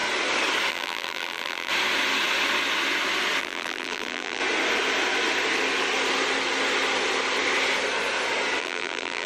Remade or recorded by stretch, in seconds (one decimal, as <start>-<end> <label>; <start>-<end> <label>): 0.0-0.7 recorded; 0.7-1.7 remade; 1.7-3.4 recorded; 3.4-4.4 remade; 4.4-8.6 recorded; 8.6-9.3 remade